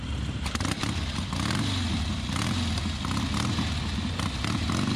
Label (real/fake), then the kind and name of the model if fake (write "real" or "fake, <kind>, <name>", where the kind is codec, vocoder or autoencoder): real